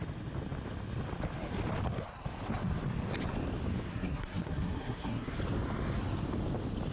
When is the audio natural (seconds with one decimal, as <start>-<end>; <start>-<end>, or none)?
0.0-3.9; 5.3-6.9